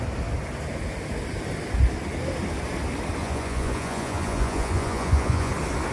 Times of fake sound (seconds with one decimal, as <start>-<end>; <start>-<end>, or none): 3.2-5.5